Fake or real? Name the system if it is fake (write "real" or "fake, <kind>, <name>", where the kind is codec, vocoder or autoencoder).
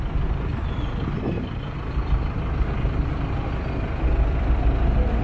real